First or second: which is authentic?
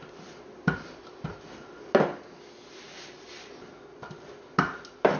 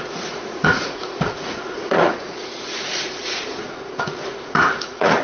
first